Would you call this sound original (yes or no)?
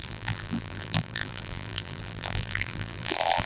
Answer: no